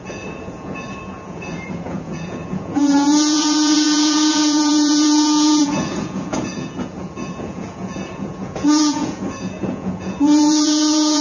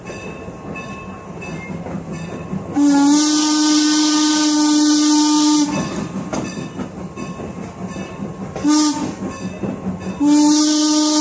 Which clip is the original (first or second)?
second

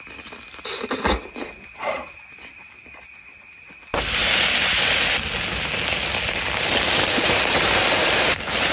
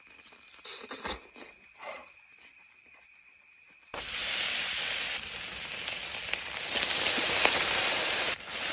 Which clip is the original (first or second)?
first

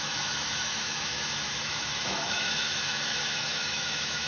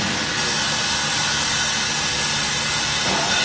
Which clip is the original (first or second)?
second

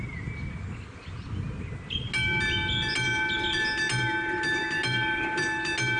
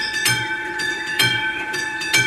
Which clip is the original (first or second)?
first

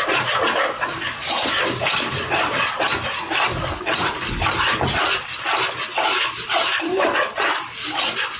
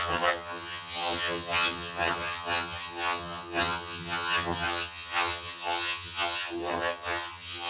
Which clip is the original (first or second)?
first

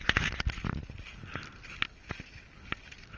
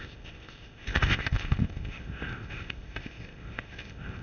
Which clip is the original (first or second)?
first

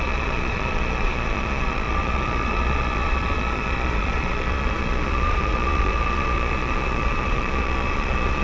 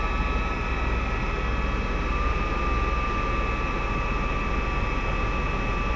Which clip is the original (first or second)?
second